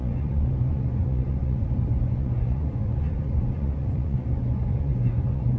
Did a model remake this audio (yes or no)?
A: yes